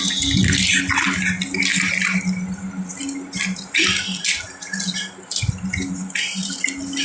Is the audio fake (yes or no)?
no